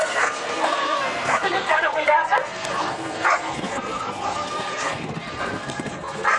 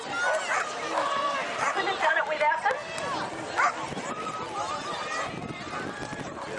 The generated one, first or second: first